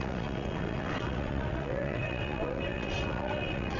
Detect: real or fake fake